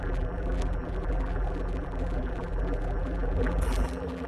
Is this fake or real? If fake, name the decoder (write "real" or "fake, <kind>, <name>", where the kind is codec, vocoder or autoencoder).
fake, vocoder, BigVGAN v2